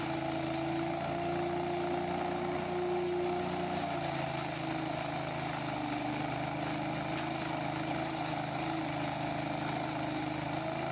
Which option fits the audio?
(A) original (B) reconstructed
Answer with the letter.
A